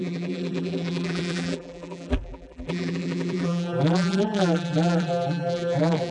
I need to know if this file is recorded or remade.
remade